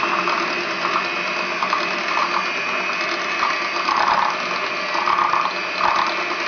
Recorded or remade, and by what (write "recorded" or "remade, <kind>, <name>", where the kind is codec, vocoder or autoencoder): recorded